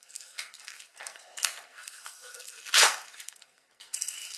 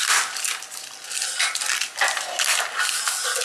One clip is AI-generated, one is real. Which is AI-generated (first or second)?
first